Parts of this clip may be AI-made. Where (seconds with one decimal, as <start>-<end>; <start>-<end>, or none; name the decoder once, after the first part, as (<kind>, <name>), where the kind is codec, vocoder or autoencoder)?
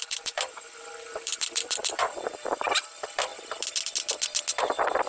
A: 0.0-3.3 (vocoder, BigVGAN v2); 4.6-5.1